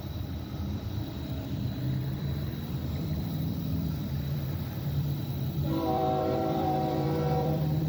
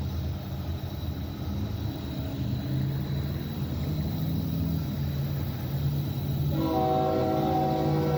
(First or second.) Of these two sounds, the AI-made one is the first